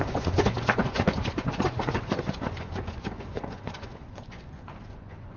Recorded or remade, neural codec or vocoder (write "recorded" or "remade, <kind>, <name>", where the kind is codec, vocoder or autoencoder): remade, vocoder, Vocos